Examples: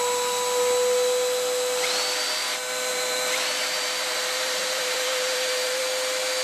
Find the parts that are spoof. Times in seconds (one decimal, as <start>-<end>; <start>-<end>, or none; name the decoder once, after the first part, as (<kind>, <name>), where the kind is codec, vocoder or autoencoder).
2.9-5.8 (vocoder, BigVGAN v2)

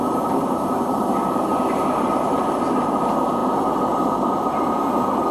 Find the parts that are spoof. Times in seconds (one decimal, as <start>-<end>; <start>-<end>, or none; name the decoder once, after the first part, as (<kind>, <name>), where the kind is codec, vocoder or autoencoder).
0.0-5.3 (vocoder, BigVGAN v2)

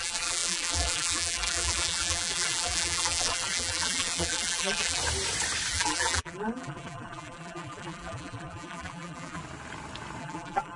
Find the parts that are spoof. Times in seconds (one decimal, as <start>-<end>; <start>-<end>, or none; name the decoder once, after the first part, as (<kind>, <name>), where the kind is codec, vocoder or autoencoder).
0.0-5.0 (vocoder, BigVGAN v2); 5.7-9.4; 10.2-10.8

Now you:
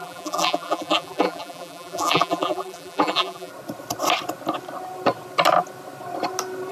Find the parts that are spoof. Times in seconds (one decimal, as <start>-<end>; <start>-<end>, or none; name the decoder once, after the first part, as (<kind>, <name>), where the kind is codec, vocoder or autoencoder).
0.0-3.5 (vocoder, BigVGAN v2)

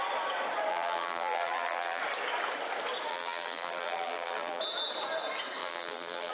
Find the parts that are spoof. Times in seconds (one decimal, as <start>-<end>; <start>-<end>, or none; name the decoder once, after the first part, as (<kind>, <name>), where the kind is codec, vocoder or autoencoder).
0.7-2.0 (vocoder, BigVGAN v2); 3.1-4.6; 5.6-6.3

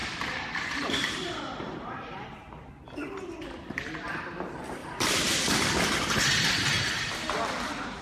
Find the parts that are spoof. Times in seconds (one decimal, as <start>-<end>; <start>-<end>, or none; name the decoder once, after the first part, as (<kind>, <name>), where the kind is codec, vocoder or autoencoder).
0.0-1.4 (vocoder, BigVGAN v2); 4.8-5.5